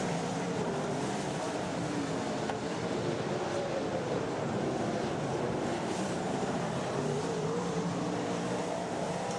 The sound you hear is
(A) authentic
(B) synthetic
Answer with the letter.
B